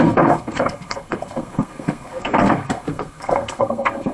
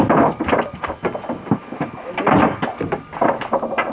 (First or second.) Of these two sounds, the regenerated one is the first